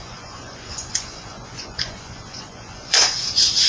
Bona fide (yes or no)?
no